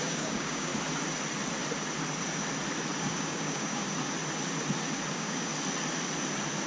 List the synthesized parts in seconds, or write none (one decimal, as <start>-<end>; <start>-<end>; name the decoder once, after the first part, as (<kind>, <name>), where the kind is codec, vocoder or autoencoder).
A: 0.0-0.7 (codec, DAC); 3.0-3.8; 5.1-5.5